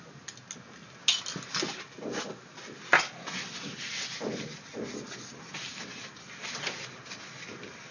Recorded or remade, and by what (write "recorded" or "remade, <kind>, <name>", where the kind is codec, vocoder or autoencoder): recorded